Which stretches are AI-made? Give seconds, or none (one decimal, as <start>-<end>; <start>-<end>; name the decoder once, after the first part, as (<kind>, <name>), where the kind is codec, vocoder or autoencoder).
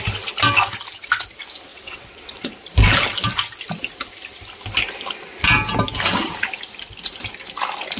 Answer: 1.7-2.5 (vocoder, WaveNeXt)